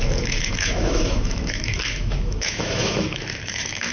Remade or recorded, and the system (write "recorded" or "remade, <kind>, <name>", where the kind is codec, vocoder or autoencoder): remade, autoencoder, DAC-VAE